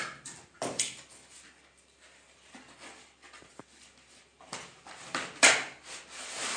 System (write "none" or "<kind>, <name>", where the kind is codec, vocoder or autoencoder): none